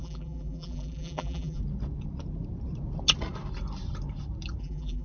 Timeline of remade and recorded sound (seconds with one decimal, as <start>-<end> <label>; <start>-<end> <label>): 0.0-1.6 remade; 1.6-4.6 recorded; 4.6-5.0 remade